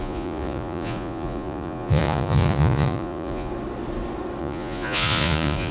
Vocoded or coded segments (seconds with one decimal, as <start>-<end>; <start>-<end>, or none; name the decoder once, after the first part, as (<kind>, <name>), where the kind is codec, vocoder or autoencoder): 0.0-3.5 (vocoder, Vocos); 4.4-5.7